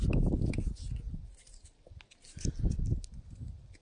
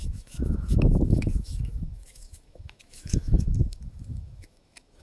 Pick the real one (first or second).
first